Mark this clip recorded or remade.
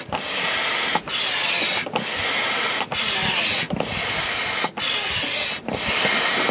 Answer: recorded